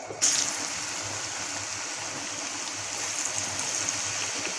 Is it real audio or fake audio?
real